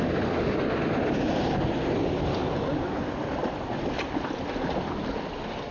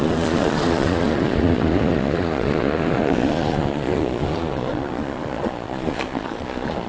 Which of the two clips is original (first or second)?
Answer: first